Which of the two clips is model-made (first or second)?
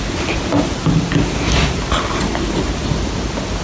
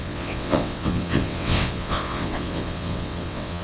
second